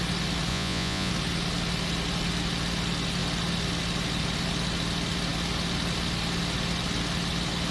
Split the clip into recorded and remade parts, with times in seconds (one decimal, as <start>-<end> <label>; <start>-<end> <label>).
0.0-0.5 recorded; 0.5-1.1 remade; 1.1-7.7 recorded